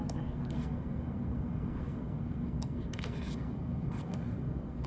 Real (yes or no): no